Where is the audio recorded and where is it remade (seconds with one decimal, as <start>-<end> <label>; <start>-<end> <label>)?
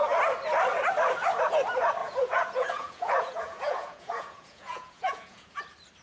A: 0.0-2.0 recorded; 2.0-5.6 remade; 5.6-6.0 recorded